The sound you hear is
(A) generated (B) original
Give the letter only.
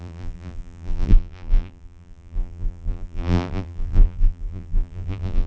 A